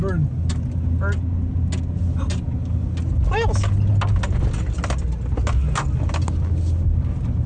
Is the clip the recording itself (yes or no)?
yes